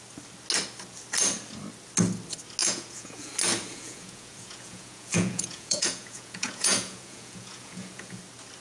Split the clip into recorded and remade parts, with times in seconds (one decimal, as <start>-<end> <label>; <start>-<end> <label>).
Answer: 0.0-2.6 recorded; 2.6-3.3 remade; 3.3-3.7 recorded; 3.7-8.2 remade; 8.2-8.6 recorded